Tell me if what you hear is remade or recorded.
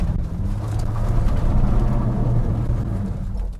remade